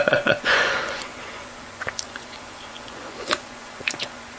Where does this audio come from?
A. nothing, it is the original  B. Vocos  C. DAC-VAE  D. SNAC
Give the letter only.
B